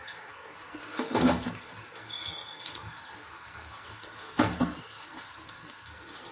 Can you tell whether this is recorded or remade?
remade